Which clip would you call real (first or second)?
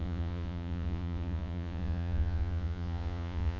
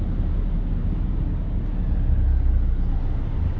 second